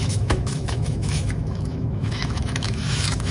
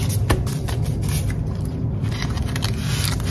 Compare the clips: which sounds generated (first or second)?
first